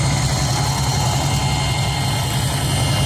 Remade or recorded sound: recorded